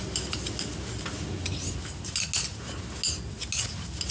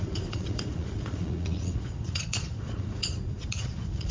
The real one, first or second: first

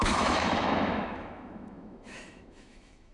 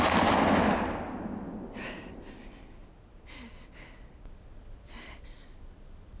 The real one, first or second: second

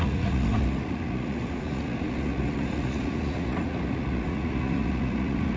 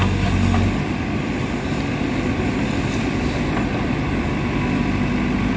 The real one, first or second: second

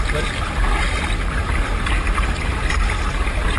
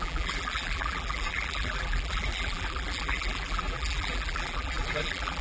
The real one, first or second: first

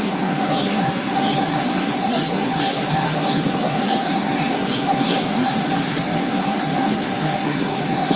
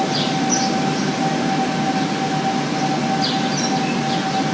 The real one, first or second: second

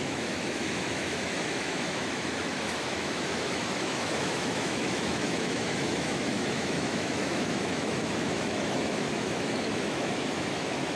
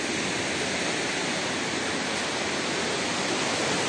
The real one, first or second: second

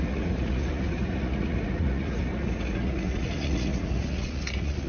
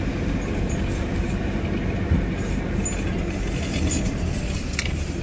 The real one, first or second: second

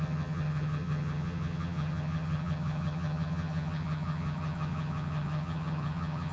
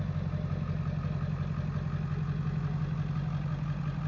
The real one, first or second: second